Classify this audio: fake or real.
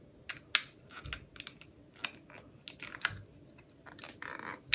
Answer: real